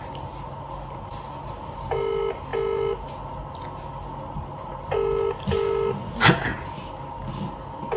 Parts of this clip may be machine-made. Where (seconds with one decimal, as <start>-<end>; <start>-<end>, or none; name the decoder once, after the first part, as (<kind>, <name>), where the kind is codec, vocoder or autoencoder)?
none